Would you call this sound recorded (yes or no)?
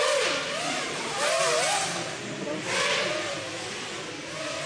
yes